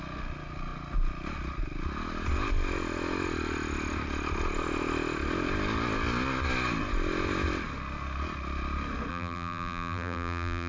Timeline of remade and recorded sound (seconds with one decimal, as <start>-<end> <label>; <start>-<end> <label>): 0.0-9.1 recorded; 9.1-10.7 remade